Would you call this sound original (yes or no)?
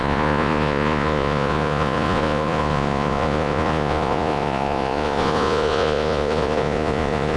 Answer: no